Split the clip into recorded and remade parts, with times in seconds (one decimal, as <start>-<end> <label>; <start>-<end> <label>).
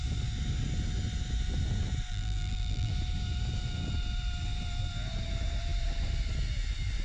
0.0-2.1 recorded; 2.1-2.9 remade; 2.9-7.0 recorded